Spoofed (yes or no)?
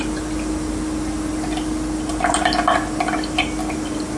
no